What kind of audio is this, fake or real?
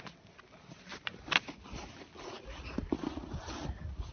real